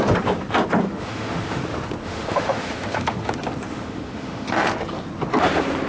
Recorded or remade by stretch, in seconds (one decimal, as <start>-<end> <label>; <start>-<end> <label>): 0.0-0.9 recorded; 0.9-1.6 remade; 1.6-2.0 recorded; 2.0-3.3 remade; 3.3-3.7 recorded; 3.7-4.5 remade; 4.5-5.9 recorded